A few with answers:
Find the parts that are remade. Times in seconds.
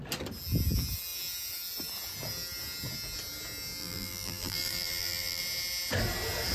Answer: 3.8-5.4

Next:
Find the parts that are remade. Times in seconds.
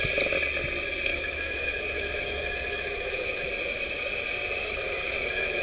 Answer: 1.1-3.5; 4.6-5.6